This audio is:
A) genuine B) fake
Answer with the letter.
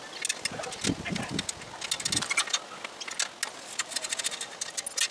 A